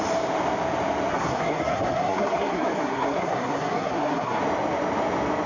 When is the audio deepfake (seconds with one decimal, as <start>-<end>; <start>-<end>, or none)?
1.1-4.4